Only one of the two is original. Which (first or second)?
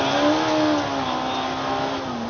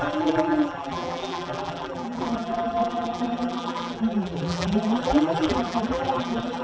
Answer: first